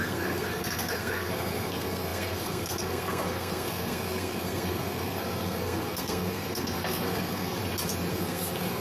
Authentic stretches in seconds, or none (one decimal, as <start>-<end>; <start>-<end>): 7.6-8.1